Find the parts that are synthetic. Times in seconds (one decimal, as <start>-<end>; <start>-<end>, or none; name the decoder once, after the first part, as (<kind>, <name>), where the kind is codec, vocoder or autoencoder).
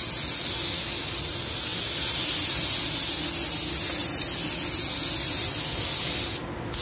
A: none